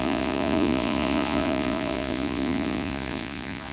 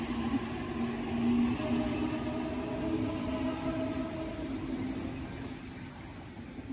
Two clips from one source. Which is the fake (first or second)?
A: first